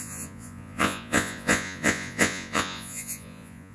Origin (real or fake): fake